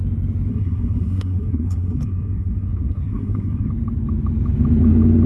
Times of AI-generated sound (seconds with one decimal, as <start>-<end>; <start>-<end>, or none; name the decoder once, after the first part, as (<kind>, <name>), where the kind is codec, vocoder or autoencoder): 0.5-3.7 (codec, SNAC)